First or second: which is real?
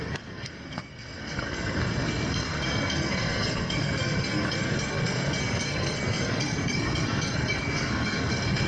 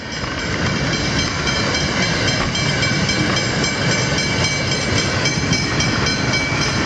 second